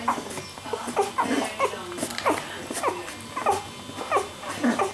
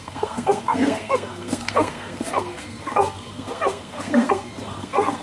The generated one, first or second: second